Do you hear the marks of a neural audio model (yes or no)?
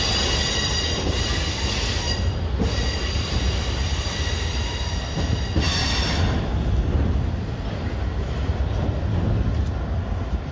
no